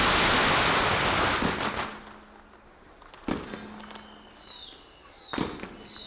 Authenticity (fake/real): real